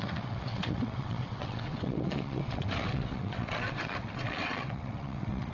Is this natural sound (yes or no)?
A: no